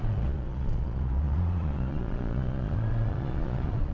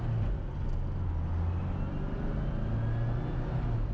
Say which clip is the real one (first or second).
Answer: second